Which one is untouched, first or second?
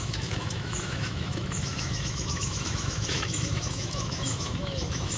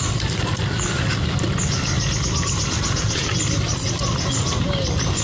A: second